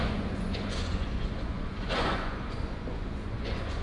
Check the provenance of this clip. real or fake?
fake